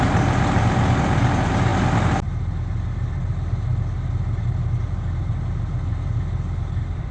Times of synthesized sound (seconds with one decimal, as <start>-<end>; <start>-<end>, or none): none